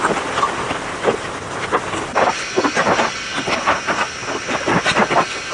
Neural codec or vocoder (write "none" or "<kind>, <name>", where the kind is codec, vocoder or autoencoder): none